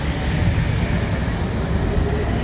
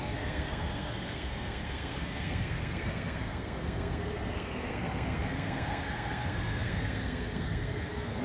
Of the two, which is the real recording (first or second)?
first